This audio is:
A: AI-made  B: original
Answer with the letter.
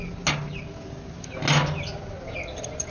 B